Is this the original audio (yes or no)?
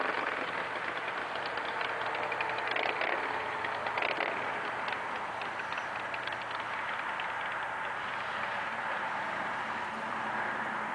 yes